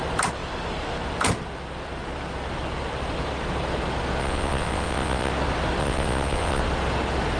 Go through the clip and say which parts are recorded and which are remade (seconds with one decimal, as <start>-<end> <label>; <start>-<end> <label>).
0.0-4.2 recorded; 4.2-5.3 remade; 5.3-5.8 recorded; 5.8-6.6 remade; 6.6-7.4 recorded